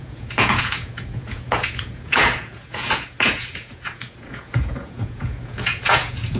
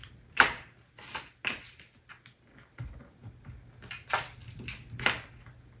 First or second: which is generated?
first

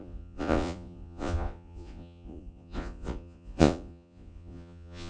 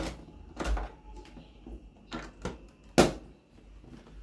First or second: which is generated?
first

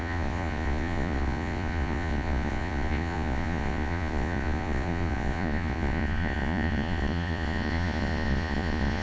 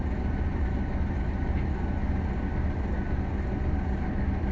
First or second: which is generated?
first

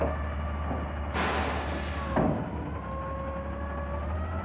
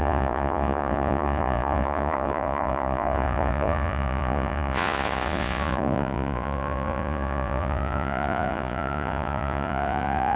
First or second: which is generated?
second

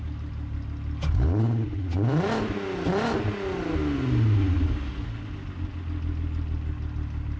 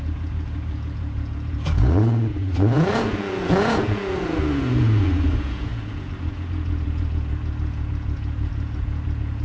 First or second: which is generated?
second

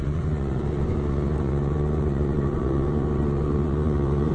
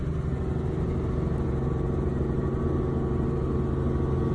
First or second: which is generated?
first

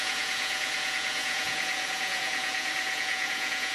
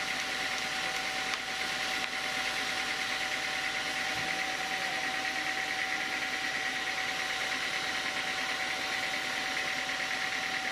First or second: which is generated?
first